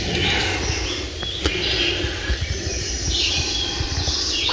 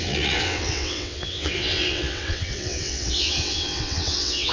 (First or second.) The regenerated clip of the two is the second